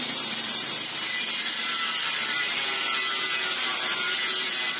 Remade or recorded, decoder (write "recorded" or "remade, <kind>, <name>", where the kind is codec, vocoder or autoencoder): recorded